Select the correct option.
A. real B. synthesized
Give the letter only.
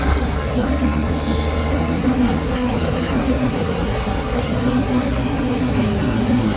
B